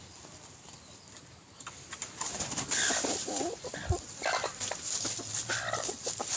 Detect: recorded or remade recorded